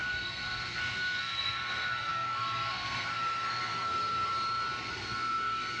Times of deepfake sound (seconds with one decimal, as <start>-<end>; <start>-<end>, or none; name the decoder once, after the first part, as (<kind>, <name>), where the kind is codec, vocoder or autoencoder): 0.0-4.3 (codec, SNAC); 4.9-5.8